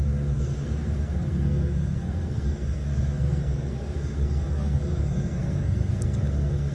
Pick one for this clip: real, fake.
fake